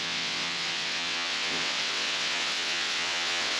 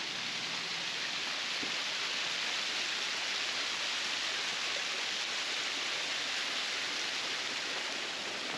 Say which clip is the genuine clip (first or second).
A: second